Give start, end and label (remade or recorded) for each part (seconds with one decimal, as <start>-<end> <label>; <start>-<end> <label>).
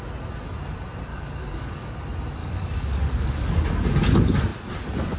0.0-1.1 recorded; 1.1-2.0 remade; 2.0-2.4 recorded; 2.4-3.5 remade; 3.5-5.2 recorded